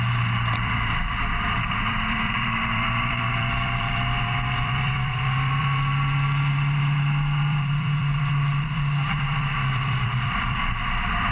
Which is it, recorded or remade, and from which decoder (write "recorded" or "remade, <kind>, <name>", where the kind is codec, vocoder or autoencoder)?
remade, vocoder, BigVGAN v2